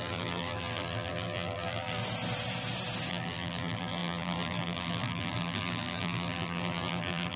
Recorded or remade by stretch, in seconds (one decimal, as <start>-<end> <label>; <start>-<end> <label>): 0.0-2.0 remade; 2.0-3.1 recorded; 3.1-7.4 remade